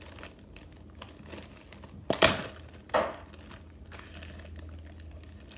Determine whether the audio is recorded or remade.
recorded